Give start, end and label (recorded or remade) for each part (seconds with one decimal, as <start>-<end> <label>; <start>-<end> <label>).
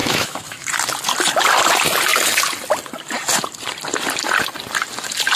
0.0-0.7 remade; 0.7-5.4 recorded